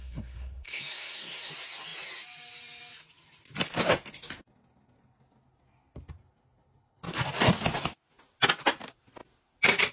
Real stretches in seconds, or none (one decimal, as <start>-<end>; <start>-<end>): 1.5-9.9